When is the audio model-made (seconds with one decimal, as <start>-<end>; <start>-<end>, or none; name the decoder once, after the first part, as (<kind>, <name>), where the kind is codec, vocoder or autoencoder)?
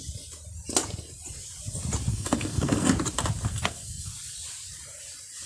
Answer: 2.1-2.9 (codec, SNAC); 3.5-4.1